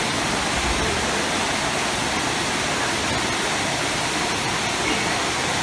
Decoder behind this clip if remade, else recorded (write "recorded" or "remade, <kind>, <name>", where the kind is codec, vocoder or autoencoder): recorded